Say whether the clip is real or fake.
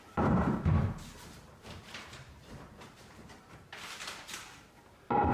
fake